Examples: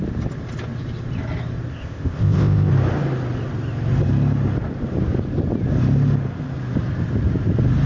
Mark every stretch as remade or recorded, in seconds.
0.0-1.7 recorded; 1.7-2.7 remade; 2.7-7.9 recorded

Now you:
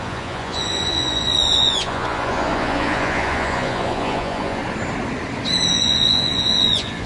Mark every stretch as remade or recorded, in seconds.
0.0-4.6 remade; 4.6-5.7 recorded; 5.7-7.1 remade

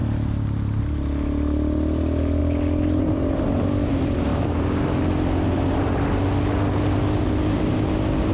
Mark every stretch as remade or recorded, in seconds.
0.0-4.3 recorded; 4.3-4.8 remade; 4.8-8.3 recorded

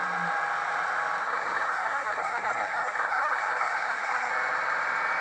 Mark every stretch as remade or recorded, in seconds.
0.0-1.2 recorded; 1.2-4.3 remade; 4.3-5.2 recorded